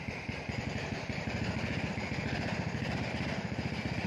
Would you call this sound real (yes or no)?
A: no